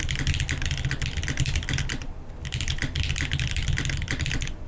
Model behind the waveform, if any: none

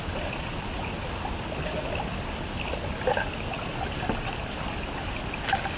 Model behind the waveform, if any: none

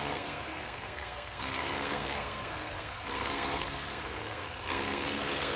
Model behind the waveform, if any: codec, SNAC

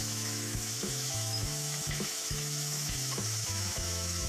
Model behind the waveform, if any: autoencoder, DAC-VAE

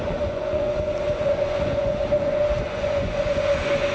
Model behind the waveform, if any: vocoder, Vocos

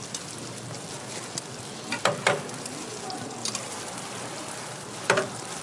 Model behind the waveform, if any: none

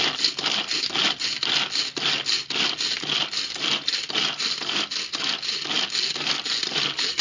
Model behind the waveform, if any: none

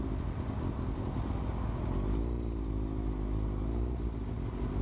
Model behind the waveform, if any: none